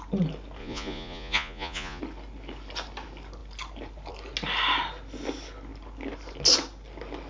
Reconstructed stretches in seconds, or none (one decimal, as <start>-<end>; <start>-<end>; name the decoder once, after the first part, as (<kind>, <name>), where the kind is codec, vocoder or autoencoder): 0.6-2.0 (vocoder, Vocos)